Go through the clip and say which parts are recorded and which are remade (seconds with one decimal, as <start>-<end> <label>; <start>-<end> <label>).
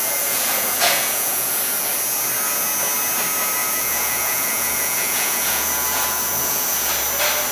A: 0.0-1.5 remade; 1.5-3.6 recorded; 3.6-6.9 remade; 6.9-7.5 recorded